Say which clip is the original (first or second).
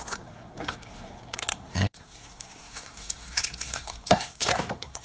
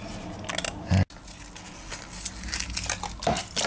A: second